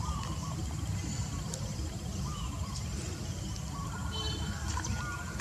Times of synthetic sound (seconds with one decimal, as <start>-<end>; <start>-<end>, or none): none